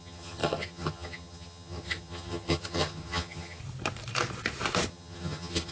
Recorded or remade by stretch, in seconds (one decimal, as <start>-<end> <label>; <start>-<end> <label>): 0.0-3.6 remade; 3.6-4.9 recorded; 4.9-5.7 remade